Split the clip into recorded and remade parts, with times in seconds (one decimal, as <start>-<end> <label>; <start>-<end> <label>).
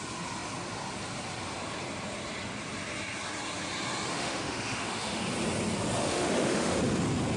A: 0.0-4.1 recorded; 4.1-5.2 remade; 5.2-6.0 recorded; 6.0-6.8 remade; 6.8-7.4 recorded